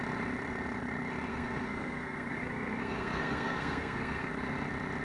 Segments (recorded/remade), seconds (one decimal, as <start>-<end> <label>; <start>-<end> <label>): 0.0-1.3 recorded; 1.3-4.3 remade; 4.3-5.0 recorded